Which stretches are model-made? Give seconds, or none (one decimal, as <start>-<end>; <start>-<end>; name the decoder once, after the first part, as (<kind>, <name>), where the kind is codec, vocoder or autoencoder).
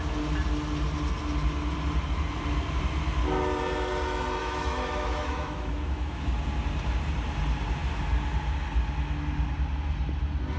4.4-6.3 (autoencoder, DAC-VAE)